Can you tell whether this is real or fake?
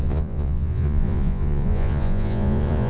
fake